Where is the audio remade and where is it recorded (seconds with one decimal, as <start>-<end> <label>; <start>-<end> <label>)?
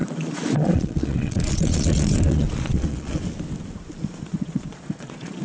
0.0-3.2 remade; 3.2-4.3 recorded; 4.3-5.4 remade